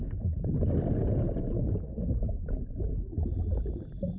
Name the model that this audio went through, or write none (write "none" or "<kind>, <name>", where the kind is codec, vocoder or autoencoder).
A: none